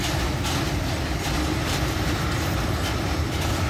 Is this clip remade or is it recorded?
remade